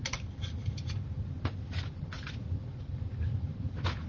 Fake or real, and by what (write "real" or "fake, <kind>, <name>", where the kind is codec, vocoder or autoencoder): real